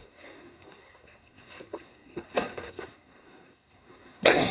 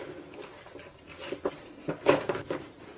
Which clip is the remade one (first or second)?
first